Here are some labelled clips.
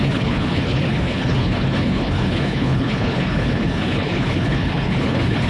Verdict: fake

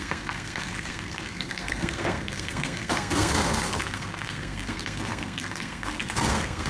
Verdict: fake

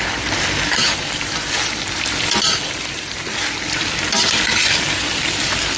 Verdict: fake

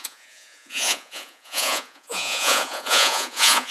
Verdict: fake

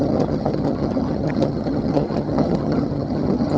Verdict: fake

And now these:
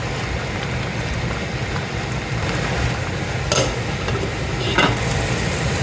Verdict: real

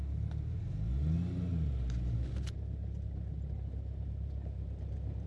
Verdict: real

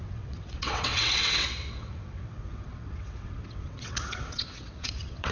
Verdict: fake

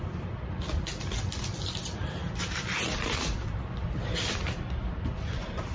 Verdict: fake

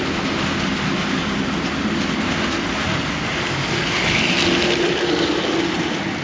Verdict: real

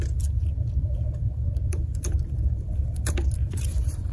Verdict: fake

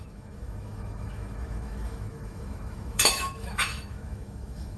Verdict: fake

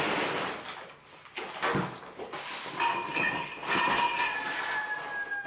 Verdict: real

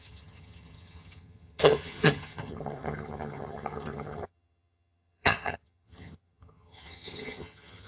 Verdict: fake